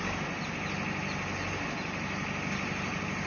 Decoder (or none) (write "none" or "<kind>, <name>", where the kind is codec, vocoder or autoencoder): none